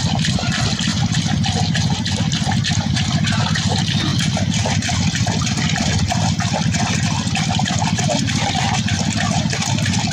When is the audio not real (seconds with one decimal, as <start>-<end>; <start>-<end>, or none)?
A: none